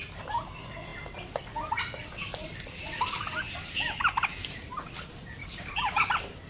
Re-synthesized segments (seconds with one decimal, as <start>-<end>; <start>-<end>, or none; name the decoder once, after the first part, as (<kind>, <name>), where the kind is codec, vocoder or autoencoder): 5.4-6.1 (codec, DAC)